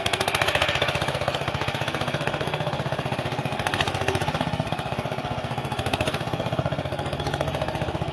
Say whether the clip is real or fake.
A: fake